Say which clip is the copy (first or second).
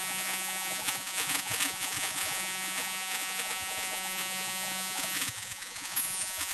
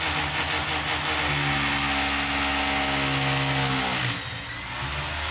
first